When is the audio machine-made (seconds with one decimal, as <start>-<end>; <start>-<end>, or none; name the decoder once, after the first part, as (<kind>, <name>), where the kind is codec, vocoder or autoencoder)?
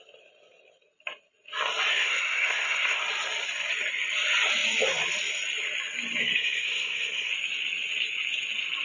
1.9-3.0 (codec, SNAC); 6.2-7.3